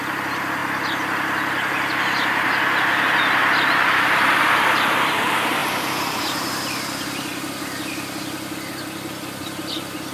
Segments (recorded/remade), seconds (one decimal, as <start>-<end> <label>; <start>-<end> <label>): 0.0-0.6 remade; 0.6-4.0 recorded; 4.0-7.3 remade; 7.3-8.7 recorded; 8.7-10.1 remade